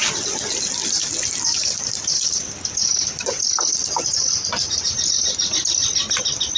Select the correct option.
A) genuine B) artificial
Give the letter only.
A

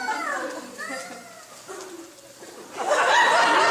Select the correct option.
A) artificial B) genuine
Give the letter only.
B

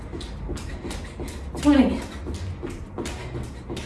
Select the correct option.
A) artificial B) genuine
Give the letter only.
B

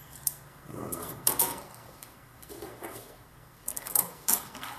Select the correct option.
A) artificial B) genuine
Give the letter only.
A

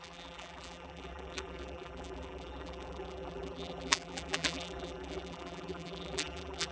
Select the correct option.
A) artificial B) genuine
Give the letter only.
A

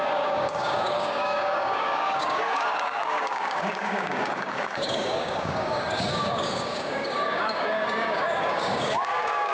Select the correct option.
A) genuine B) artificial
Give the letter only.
B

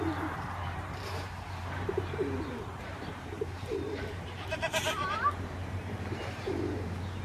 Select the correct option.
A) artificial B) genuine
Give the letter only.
A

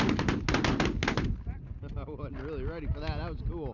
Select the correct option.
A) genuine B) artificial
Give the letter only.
A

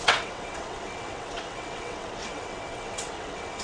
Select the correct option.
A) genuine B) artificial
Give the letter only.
B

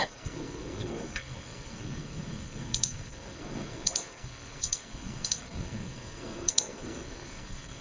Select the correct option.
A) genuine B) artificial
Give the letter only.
B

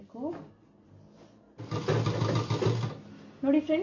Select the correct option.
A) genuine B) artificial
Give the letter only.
A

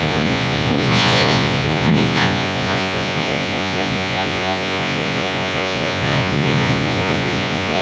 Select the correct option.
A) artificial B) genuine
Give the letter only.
A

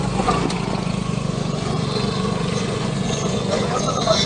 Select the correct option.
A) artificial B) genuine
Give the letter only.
A